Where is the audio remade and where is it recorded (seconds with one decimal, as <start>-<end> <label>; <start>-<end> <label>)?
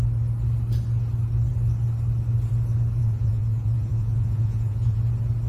0.0-3.0 recorded; 3.0-5.0 remade; 5.0-5.5 recorded